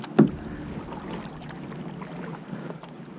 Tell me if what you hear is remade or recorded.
recorded